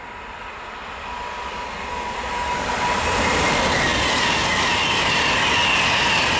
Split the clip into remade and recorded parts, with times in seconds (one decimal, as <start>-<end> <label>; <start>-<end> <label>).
0.0-6.4 recorded